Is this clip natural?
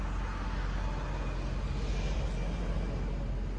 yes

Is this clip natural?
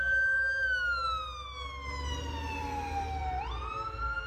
yes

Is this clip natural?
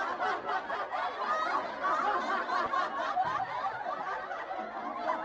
yes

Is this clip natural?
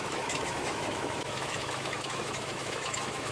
no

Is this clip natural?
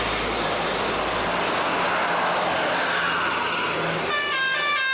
yes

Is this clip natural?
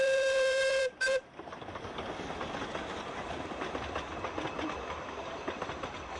no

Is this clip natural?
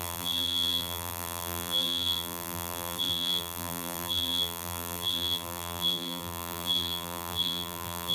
no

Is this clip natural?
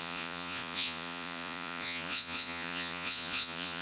no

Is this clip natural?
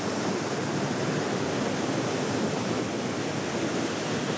yes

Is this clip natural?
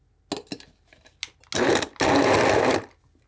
yes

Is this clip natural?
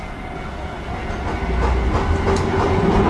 yes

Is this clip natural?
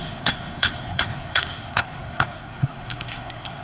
no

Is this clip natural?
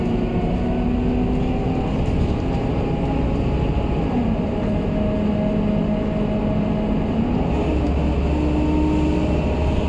yes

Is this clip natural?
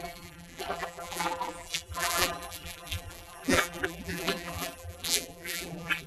no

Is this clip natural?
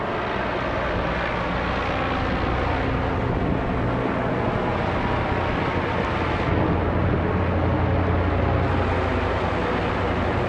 yes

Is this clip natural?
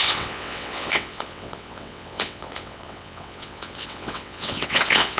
no